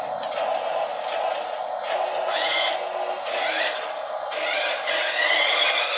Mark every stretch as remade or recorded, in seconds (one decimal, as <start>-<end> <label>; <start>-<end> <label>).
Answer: 0.0-6.0 recorded